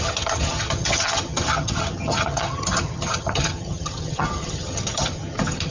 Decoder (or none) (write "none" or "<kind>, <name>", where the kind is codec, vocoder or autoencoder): vocoder, HiFi-GAN